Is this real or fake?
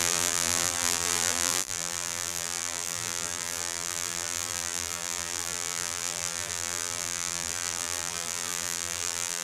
fake